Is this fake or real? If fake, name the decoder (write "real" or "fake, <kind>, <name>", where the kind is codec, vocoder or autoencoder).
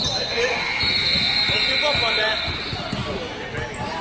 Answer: real